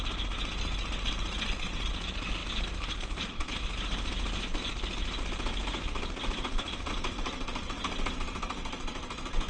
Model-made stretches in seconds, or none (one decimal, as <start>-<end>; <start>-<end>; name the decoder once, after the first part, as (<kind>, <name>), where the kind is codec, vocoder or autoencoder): none